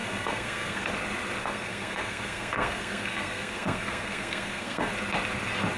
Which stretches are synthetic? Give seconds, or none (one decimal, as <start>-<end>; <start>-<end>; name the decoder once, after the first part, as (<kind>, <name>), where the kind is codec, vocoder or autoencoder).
0.0-0.9 (codec, SNAC); 1.4-4.9